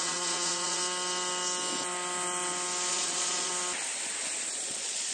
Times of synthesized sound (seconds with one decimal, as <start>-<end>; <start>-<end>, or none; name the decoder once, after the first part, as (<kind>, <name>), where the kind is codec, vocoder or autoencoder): 0.0-0.8 (vocoder, Vocos); 2.9-3.5; 4.5-5.1